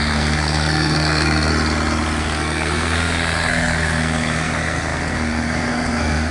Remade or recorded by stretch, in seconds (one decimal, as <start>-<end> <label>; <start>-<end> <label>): 0.0-1.5 remade; 1.5-2.2 recorded; 2.2-6.3 remade